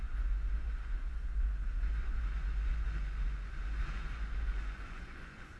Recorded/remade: remade